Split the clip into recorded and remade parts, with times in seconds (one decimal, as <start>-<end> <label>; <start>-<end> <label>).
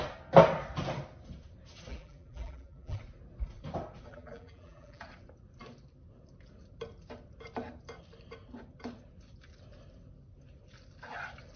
0.0-1.9 recorded; 1.9-3.0 remade; 3.0-4.1 recorded; 4.1-5.0 remade; 5.0-11.6 recorded